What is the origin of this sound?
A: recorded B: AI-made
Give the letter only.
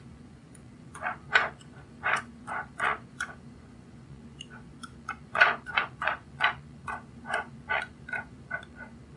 B